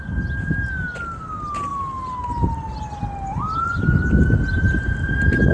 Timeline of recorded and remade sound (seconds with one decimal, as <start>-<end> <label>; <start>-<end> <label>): 0.0-5.5 recorded